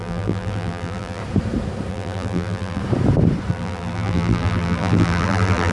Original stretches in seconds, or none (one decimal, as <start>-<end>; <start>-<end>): 1.2-1.9; 2.8-3.5